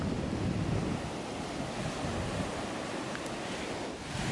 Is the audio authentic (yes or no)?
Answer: yes